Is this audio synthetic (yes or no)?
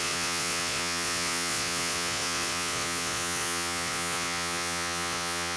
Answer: yes